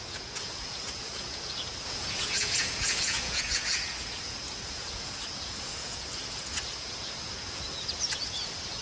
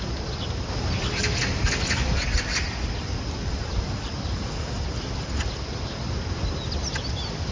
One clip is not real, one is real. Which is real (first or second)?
second